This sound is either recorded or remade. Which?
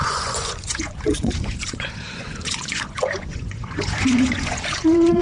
remade